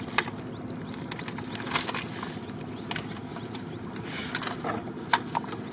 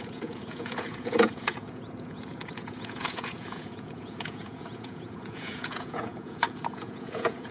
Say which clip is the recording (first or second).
first